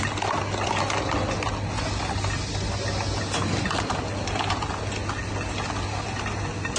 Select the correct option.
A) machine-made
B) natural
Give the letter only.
B